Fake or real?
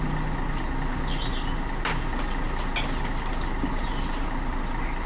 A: real